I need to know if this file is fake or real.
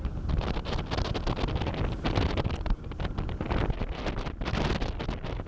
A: real